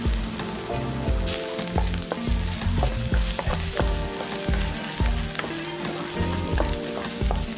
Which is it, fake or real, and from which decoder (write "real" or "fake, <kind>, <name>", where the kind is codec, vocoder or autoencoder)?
real